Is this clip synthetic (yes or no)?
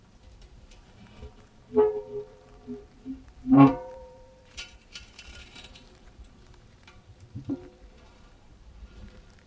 yes